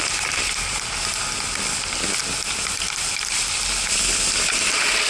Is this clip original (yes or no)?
yes